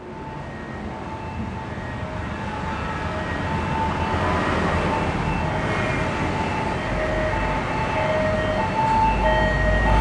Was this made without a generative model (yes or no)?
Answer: yes